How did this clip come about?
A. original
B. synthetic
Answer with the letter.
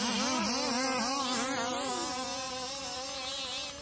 A